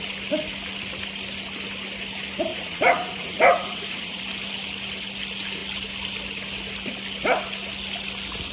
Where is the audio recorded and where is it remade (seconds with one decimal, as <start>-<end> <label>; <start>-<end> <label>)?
0.0-2.5 recorded; 2.5-4.2 remade; 4.2-8.5 recorded